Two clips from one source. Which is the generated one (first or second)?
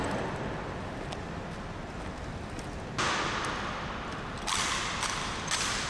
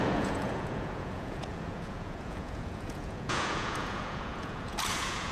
second